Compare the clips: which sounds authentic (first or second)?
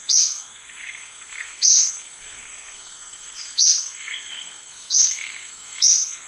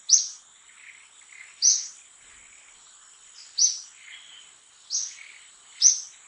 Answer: second